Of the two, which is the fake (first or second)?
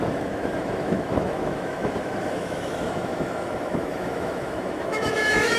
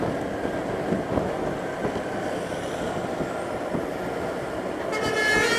first